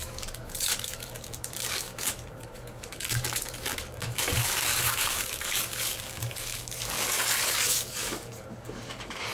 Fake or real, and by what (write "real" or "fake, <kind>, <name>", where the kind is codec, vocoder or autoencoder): fake, codec, DAC